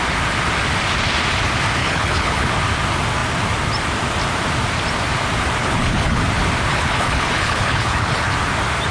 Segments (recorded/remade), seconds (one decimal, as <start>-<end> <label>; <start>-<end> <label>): 0.0-1.8 recorded; 1.8-2.5 remade; 2.5-5.6 recorded; 5.6-6.2 remade; 6.2-6.7 recorded; 6.7-8.3 remade; 8.3-8.9 recorded